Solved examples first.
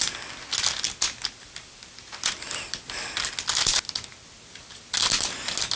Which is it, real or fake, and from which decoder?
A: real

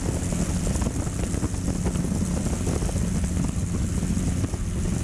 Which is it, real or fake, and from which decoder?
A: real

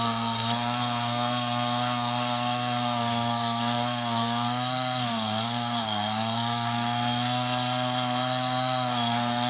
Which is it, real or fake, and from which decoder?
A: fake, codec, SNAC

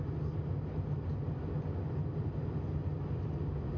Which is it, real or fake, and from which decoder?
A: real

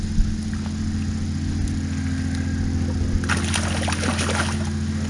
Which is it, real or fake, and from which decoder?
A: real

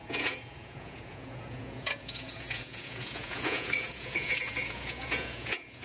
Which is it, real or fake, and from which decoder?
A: fake, vocoder, Vocos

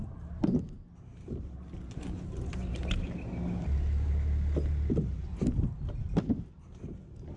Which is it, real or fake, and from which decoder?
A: real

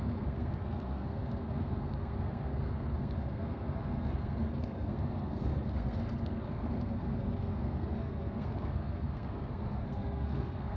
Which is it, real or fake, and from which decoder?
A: fake, codec, SNAC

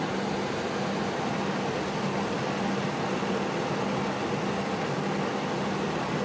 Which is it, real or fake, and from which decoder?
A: real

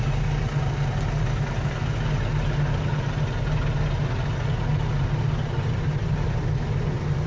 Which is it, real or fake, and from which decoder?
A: real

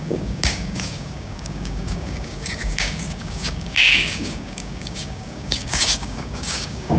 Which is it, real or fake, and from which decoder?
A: fake, codec, DAC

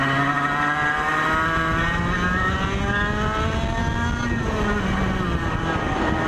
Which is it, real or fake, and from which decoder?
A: real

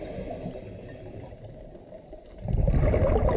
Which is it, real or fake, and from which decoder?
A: real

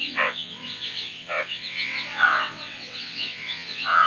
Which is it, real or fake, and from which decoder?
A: fake, vocoder, WaveNeXt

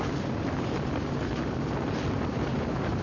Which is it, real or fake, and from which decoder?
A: real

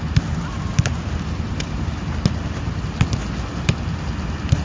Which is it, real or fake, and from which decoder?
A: real